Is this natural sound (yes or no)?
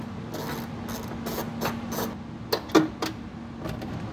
yes